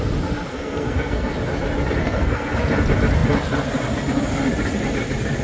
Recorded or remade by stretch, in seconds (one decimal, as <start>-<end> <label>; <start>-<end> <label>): 0.0-0.5 recorded; 0.5-1.3 remade; 1.3-2.0 recorded; 2.0-2.5 remade; 2.5-5.4 recorded